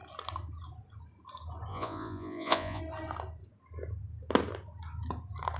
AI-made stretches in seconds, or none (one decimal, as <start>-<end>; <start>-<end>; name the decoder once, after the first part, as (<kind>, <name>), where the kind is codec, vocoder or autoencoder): 1.7-2.8 (vocoder, Vocos)